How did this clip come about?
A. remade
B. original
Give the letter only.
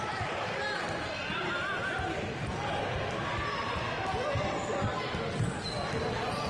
B